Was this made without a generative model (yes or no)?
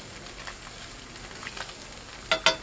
yes